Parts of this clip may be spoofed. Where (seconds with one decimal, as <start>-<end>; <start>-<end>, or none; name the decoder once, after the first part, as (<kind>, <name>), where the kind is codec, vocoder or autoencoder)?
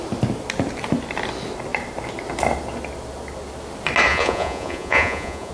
4.1-5.5 (vocoder, Vocos)